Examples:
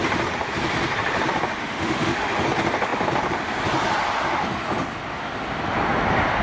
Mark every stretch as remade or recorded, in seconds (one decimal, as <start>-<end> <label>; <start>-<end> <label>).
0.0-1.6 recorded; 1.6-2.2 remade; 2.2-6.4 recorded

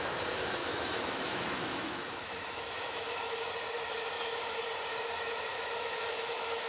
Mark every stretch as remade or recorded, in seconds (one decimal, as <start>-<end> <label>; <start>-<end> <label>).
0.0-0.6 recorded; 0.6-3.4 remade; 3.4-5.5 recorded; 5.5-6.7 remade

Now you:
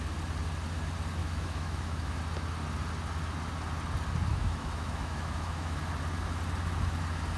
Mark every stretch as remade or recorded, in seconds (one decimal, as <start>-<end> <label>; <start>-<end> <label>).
0.0-1.2 recorded; 1.2-2.2 remade; 2.2-4.3 recorded; 4.3-5.8 remade; 5.8-7.4 recorded

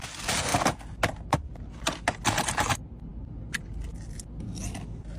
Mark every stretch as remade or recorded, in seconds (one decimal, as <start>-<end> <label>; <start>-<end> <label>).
0.0-5.2 recorded

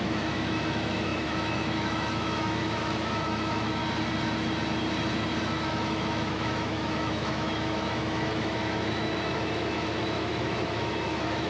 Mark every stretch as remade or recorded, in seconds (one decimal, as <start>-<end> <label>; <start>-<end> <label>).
0.0-3.8 remade; 3.8-5.4 recorded; 5.4-11.5 remade